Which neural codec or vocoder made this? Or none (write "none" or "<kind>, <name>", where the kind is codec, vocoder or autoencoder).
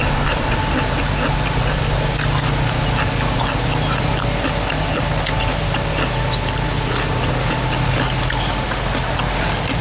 none